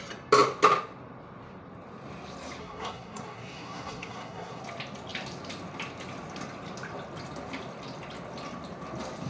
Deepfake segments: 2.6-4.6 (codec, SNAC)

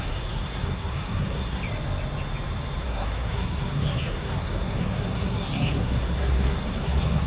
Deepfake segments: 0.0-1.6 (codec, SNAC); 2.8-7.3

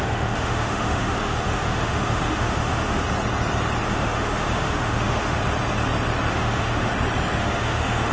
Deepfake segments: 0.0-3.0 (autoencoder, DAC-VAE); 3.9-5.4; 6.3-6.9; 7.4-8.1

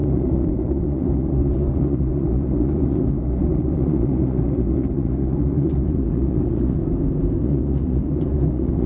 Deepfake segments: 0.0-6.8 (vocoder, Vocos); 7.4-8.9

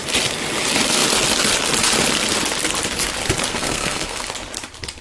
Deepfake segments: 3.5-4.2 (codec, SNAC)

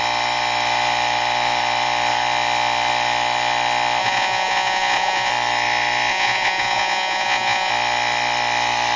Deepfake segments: 4.0-5.3 (vocoder, Vocos); 6.1-7.7

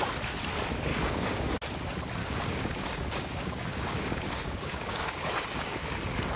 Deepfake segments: 0.9-1.5 (codec, DAC); 2.2-5.8